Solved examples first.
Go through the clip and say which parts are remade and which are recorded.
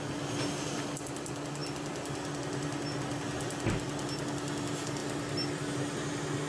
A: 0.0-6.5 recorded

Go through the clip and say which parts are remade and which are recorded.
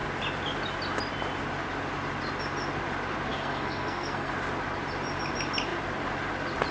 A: 0.0-3.3 recorded; 3.3-4.3 remade; 4.3-6.7 recorded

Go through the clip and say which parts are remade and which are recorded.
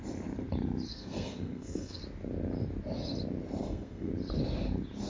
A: 0.0-0.9 recorded; 0.9-2.0 remade; 2.0-3.6 recorded; 3.6-4.1 remade; 4.1-5.1 recorded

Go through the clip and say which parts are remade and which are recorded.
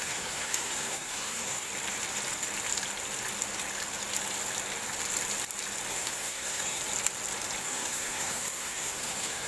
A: 0.0-1.7 remade; 1.7-5.9 recorded; 5.9-6.8 remade; 6.8-7.6 recorded; 7.6-9.5 remade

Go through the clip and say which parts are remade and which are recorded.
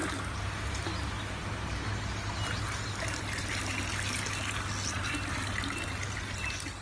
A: 0.0-6.8 recorded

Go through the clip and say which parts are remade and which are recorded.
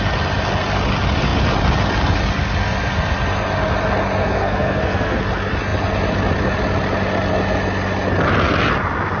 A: 0.0-4.2 recorded; 4.2-5.2 remade; 5.2-9.2 recorded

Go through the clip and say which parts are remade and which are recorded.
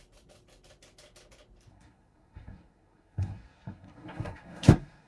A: 0.0-1.7 recorded; 1.7-5.1 remade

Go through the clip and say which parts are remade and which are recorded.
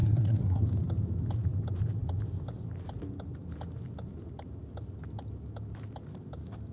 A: 0.0-0.6 remade; 0.6-6.7 recorded